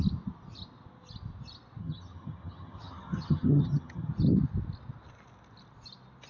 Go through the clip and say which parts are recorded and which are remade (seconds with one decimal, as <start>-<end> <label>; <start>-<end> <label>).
0.0-1.8 recorded; 1.8-4.1 remade; 4.1-6.3 recorded